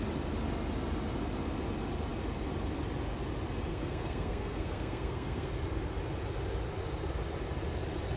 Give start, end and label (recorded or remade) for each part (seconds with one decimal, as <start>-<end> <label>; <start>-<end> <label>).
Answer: 0.0-3.7 recorded; 3.7-5.5 remade; 5.5-8.2 recorded